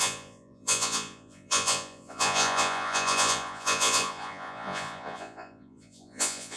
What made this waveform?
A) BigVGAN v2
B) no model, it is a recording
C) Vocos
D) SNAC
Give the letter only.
C